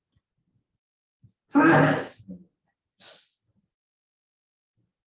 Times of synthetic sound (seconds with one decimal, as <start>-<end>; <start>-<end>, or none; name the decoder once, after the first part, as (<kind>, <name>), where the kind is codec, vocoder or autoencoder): 0.0-0.9 (vocoder, BigVGAN v2); 3.4-5.1